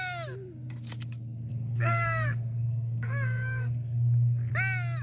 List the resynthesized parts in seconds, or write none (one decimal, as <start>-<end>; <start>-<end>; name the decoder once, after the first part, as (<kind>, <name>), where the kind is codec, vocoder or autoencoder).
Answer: 1.5-4.5 (codec, SNAC)